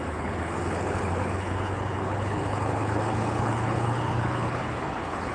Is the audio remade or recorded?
remade